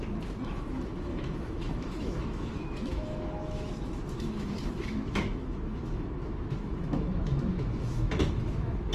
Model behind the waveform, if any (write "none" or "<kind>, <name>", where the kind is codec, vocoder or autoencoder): autoencoder, DAC-VAE